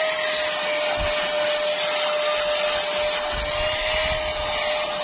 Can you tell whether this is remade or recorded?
recorded